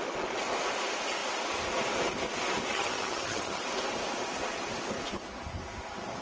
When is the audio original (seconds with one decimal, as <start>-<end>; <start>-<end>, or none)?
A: 0.0-2.7; 3.6-6.2